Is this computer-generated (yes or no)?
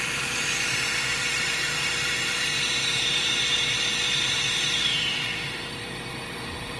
yes